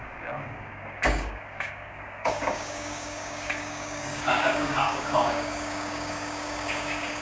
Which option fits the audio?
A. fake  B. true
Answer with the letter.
A